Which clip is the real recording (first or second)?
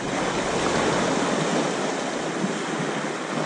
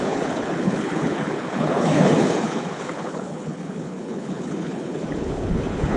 first